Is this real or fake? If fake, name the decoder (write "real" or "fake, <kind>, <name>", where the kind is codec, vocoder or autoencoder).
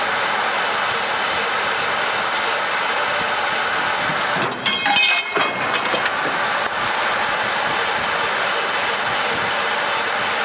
real